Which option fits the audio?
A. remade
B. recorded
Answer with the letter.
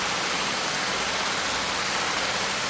B